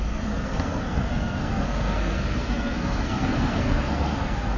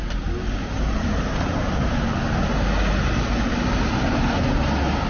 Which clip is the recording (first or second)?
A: second